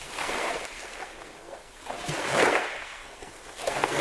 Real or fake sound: fake